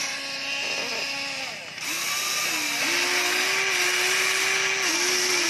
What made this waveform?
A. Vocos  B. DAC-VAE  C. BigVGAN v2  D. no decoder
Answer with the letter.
D